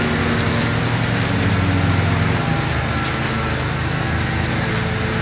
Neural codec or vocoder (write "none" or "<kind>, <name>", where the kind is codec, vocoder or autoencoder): none